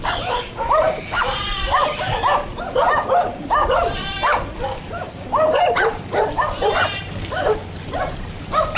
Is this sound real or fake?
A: fake